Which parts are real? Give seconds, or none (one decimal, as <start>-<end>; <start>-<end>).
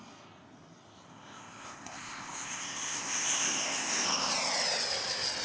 0.0-1.1; 4.3-5.4